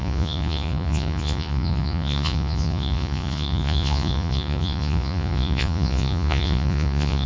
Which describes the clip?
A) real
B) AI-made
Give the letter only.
B